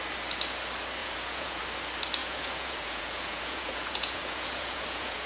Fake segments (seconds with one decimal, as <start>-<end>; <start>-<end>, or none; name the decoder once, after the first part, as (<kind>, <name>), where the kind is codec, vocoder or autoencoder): 1.0-1.6 (vocoder, Vocos); 2.2-5.3